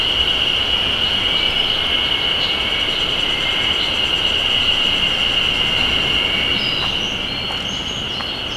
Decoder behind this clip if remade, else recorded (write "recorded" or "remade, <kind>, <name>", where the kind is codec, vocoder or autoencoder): recorded